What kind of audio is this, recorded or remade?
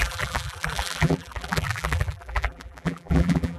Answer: remade